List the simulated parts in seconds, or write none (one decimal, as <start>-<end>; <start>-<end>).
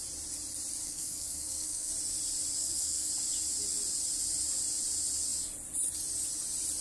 0.8-1.9; 2.6-3.1